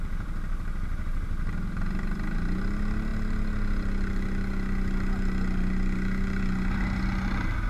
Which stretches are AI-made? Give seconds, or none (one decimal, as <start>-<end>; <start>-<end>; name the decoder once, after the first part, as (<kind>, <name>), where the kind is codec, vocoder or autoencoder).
none

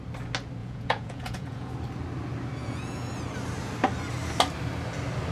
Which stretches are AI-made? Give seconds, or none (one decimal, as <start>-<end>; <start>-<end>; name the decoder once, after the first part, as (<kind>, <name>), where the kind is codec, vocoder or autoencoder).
0.6-1.7 (vocoder, Vocos); 2.6-3.1

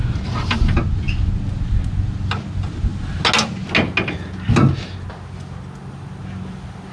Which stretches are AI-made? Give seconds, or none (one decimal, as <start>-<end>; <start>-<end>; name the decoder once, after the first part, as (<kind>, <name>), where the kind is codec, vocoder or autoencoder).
none

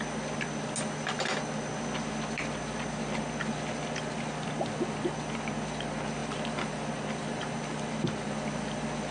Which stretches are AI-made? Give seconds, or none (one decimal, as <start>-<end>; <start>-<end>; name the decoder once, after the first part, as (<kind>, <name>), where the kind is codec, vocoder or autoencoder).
none